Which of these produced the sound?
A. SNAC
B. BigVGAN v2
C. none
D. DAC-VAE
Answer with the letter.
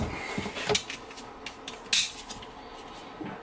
C